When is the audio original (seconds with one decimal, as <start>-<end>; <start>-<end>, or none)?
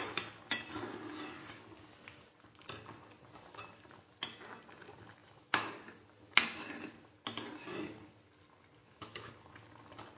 0.0-5.2; 5.7-8.8; 9.3-10.2